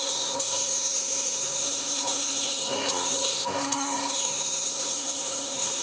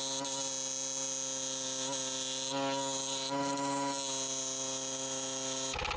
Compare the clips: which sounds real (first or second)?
second